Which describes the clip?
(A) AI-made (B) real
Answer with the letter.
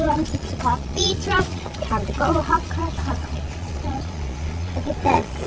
A